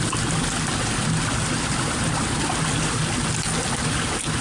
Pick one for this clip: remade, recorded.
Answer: recorded